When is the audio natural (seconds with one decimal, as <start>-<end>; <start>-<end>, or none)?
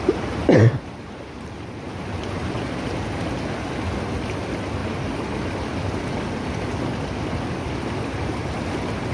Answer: 0.0-0.4; 1.9-4.8; 5.5-9.1